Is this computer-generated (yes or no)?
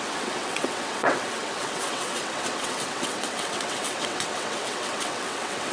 yes